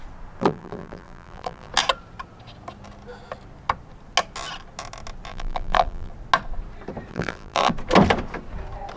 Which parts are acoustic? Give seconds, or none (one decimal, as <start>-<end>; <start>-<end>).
0.0-0.4; 1.7-5.3; 6.1-7.1; 7.7-9.0